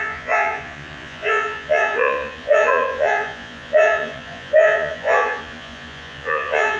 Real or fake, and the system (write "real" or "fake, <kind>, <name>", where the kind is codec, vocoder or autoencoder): fake, vocoder, Vocos